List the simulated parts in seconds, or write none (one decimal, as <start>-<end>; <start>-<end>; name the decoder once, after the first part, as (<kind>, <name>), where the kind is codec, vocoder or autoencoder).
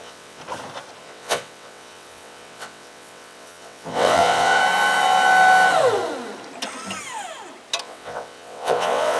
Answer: 0.0-0.4 (vocoder, WaveNeXt); 1.0-4.6; 7.8-9.2